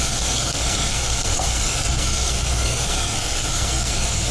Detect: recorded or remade remade